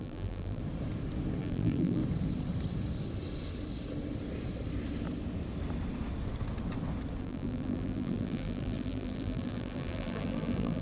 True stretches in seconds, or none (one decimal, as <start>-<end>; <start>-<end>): 0.6-1.4; 2.0-7.2